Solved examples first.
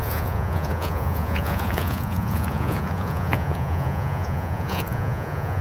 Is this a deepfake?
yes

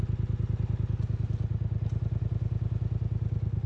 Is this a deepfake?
no